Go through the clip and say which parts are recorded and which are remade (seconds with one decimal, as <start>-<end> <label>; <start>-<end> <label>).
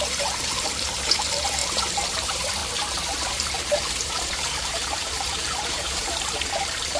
0.0-1.6 remade; 1.6-2.1 recorded; 2.1-7.0 remade